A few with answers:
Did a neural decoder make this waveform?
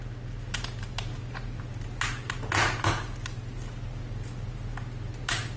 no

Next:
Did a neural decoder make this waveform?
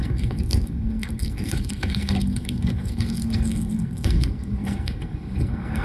yes